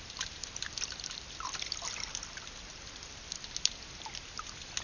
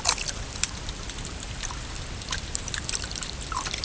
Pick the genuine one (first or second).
first